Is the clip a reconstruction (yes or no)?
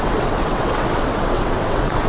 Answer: yes